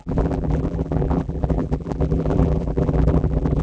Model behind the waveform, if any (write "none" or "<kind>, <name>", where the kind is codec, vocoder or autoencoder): vocoder, BigVGAN v2